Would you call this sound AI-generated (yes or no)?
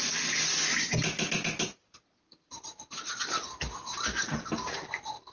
no